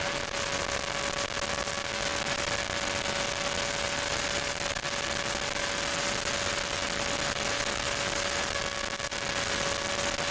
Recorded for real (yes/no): yes